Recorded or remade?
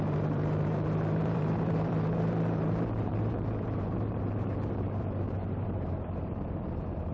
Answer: remade